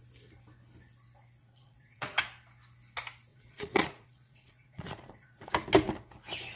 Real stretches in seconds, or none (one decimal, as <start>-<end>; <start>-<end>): 0.0-1.4; 2.2-3.3; 5.5-6.5

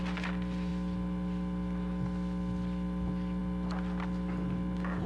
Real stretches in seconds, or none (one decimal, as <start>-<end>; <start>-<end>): 0.0-5.1

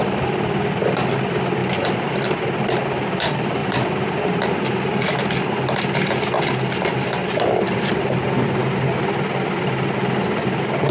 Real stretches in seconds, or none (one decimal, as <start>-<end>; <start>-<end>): 0.0-10.9

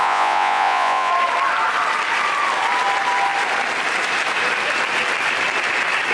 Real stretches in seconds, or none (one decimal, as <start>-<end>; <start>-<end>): 1.1-6.1